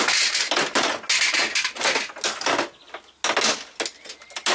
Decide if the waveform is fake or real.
real